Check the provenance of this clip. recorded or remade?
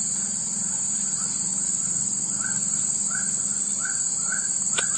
recorded